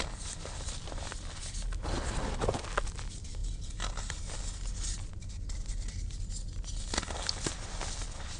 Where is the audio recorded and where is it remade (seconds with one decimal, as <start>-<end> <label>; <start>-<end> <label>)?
0.0-8.4 recorded